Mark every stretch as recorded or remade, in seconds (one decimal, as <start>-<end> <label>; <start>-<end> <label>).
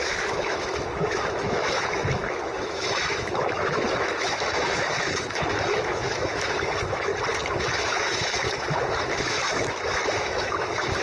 0.0-7.1 remade; 7.1-7.6 recorded; 7.6-11.0 remade